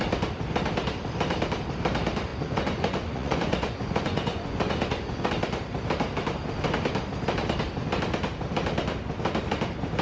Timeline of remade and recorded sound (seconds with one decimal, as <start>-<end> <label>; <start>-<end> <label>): 0.0-2.3 recorded; 2.3-5.3 remade; 5.3-10.0 recorded